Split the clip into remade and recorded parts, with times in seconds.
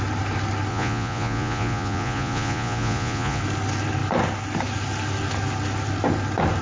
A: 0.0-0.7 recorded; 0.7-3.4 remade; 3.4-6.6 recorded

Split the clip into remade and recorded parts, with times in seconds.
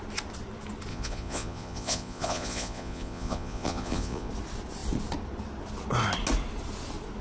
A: 0.0-0.9 recorded; 0.9-4.3 remade; 4.3-7.2 recorded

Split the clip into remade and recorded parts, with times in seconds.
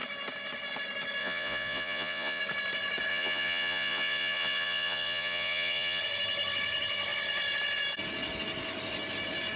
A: 0.0-1.2 recorded; 1.2-2.4 remade; 2.4-3.1 recorded; 3.1-6.0 remade; 6.0-9.6 recorded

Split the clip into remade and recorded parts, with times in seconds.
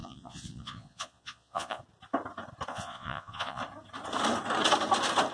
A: 0.0-1.8 remade; 1.8-2.7 recorded; 2.7-3.6 remade; 3.6-5.3 recorded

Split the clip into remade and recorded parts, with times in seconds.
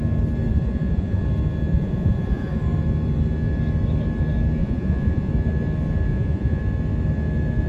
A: 0.0-0.5 recorded; 0.5-1.2 remade; 1.2-1.7 recorded; 1.7-2.6 remade; 2.6-4.6 recorded; 4.6-5.3 remade; 5.3-6.1 recorded; 6.1-6.6 remade; 6.6-7.7 recorded